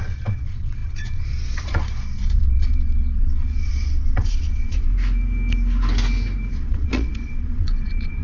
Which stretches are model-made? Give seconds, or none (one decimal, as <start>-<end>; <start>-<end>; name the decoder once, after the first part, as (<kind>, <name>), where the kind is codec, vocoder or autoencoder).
0.0-4.9 (vocoder, Vocos); 6.5-8.2